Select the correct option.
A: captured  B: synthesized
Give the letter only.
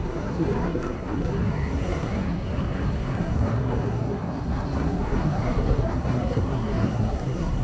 B